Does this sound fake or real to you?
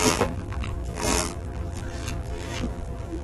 fake